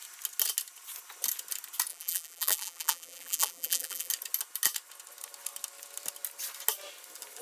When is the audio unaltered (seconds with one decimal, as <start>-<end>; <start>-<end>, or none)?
0.0-1.9; 4.1-7.4